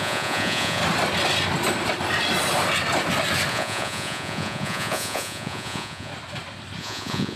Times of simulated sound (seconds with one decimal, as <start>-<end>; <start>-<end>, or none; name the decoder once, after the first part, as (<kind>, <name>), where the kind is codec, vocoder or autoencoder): 0.0-0.8 (vocoder, Vocos); 3.5-6.1; 6.8-7.4